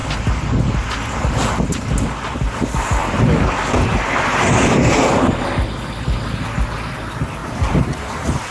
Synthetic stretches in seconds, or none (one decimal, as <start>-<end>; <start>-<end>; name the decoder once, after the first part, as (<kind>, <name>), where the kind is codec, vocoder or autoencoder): 7.4-8.5 (vocoder, BigVGAN v2)